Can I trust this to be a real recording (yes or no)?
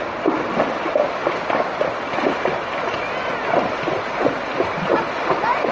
yes